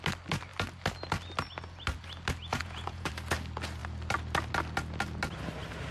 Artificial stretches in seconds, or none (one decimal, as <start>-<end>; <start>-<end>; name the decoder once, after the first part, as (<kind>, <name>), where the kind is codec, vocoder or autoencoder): 2.5-3.1 (vocoder, Vocos)